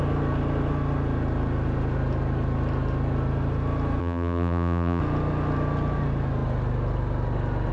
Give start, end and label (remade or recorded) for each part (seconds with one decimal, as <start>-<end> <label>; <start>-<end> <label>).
0.0-4.0 recorded; 4.0-5.0 remade; 5.0-7.7 recorded